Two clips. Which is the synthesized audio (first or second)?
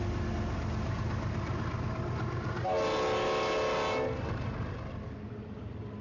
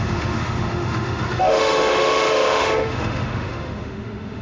second